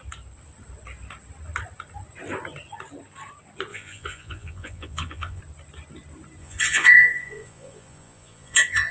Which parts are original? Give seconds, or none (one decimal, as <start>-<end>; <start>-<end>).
0.0-3.7; 5.4-6.4